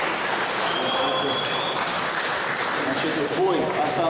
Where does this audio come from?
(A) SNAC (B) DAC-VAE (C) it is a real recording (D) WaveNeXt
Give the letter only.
C